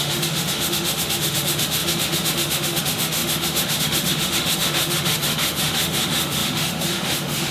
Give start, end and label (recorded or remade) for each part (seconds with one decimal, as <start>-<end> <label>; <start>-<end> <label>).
0.0-7.5 remade